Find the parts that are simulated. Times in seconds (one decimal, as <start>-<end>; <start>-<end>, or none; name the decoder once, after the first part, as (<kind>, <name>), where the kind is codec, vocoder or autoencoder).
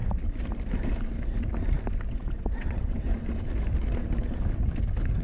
2.1-3.1 (vocoder, WaveNeXt)